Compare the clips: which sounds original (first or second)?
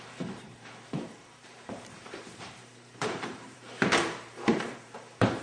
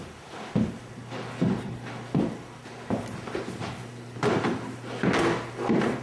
second